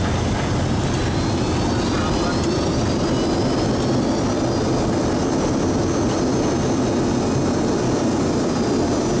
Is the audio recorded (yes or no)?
yes